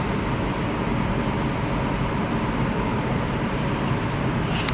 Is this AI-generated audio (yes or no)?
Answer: yes